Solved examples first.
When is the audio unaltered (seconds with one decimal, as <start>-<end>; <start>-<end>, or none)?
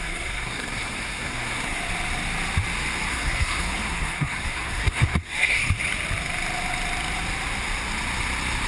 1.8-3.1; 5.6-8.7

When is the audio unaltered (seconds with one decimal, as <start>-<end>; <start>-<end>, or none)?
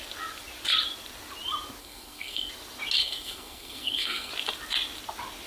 0.0-1.8; 2.5-3.0; 4.3-5.5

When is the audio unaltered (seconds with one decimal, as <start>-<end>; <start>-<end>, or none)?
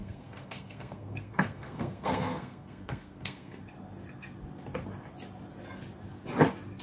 3.6-6.8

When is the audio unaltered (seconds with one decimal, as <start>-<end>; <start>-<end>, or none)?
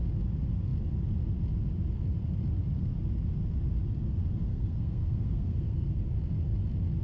0.0-4.5; 6.0-7.0